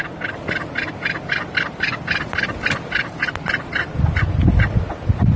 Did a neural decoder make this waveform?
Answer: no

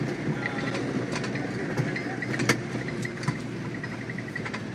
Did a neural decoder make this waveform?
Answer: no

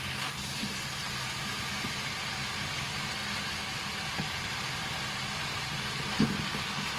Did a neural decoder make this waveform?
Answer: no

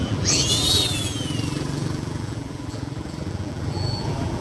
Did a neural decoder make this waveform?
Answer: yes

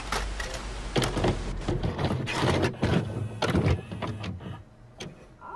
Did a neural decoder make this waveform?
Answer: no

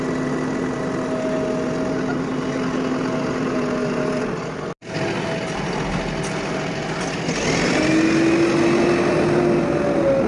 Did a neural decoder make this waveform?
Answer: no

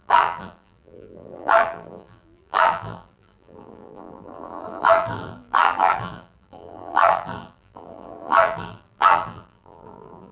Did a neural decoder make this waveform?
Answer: yes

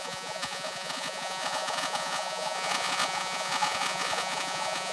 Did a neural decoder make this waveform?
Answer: yes